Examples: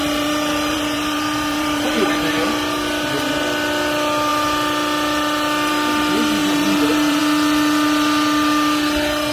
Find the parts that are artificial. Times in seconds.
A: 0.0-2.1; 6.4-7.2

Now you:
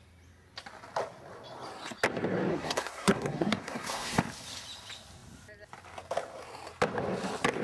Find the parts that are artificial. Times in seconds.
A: 2.5-4.2

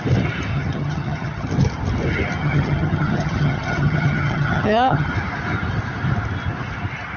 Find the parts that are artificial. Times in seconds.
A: 0.5-1.5; 2.4-5.1

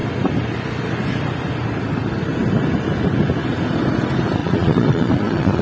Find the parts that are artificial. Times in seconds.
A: 4.4-5.6

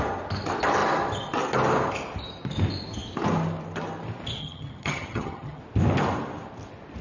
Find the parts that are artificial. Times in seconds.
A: 4.4-5.6

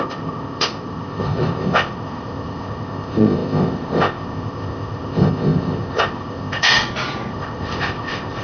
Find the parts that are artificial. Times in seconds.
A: 0.0-6.7; 7.3-8.4

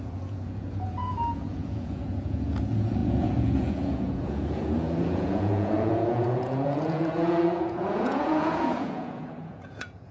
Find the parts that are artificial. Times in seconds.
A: 0.0-10.1